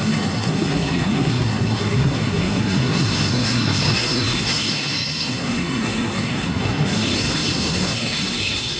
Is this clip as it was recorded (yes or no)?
no